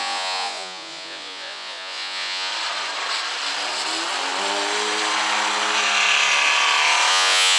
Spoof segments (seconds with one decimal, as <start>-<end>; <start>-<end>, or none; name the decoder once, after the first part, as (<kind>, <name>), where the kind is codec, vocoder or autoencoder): 0.0-2.5 (vocoder, Vocos); 7.1-7.6